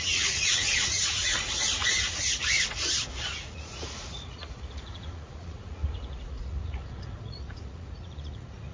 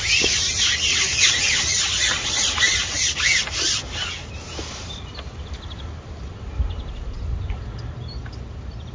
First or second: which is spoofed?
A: first